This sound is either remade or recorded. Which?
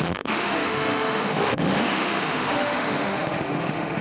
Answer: remade